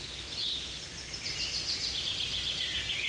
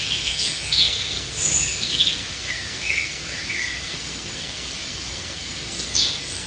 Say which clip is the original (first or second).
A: first